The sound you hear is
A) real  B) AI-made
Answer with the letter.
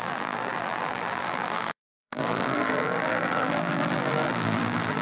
B